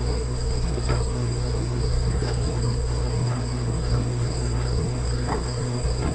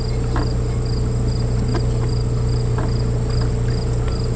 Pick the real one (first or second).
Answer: second